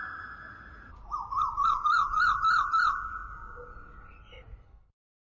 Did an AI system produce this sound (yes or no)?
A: no